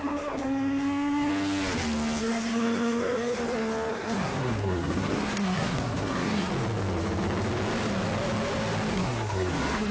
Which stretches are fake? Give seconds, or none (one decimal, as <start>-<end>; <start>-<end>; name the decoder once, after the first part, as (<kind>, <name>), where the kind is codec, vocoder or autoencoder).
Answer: 0.0-1.3 (codec, SNAC); 2.2-3.4; 3.9-6.5; 8.9-9.9